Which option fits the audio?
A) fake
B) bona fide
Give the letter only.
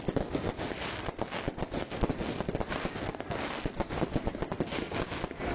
B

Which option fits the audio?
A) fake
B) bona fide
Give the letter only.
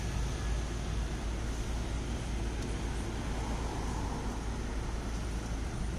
B